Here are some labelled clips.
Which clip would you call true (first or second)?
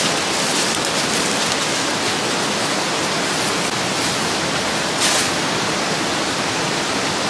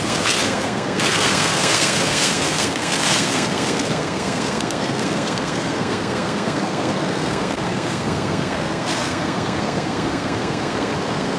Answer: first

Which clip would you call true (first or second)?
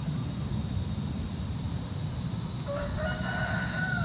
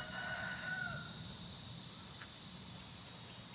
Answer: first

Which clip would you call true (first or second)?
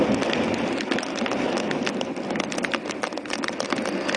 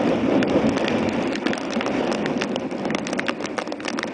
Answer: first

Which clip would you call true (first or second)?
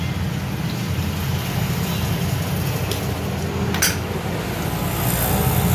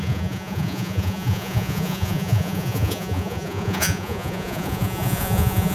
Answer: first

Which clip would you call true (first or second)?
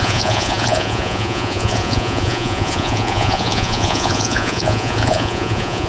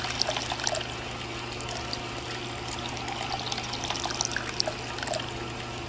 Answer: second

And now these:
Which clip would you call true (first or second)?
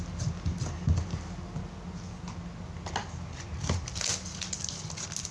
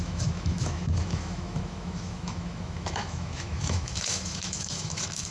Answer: first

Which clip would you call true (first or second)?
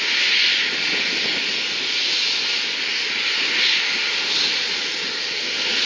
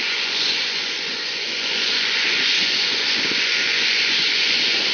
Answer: first